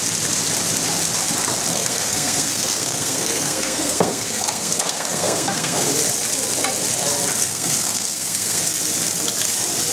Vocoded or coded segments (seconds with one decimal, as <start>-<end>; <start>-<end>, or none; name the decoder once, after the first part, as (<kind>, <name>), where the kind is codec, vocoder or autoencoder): 1.7-5.9 (codec, SNAC); 7.4-8.8